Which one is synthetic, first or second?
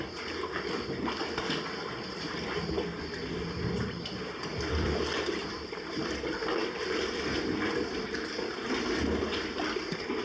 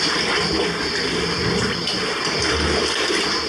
first